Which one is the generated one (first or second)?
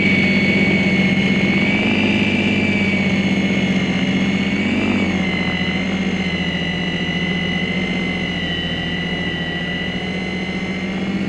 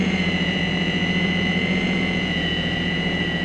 second